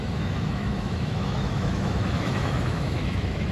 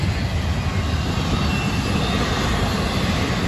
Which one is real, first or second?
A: second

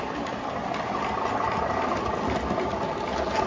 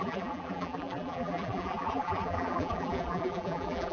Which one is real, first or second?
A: first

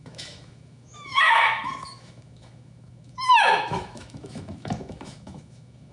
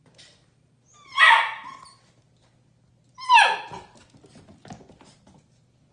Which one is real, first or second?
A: second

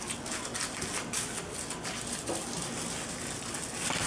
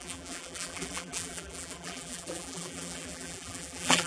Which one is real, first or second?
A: first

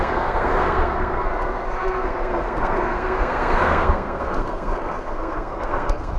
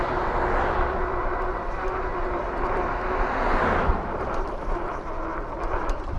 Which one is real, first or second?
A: second